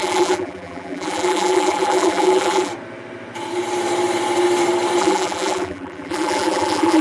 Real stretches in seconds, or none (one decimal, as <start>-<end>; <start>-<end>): 2.7-5.0